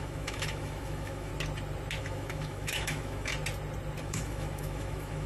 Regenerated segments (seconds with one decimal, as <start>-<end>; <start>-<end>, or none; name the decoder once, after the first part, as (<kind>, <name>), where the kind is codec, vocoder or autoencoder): 0.0-1.3 (autoencoder, DAC-VAE); 2.0-3.3; 4.0-5.3